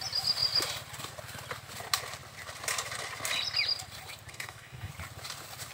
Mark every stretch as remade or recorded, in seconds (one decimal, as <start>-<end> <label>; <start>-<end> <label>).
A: 0.0-4.3 recorded; 4.3-4.9 remade; 4.9-5.7 recorded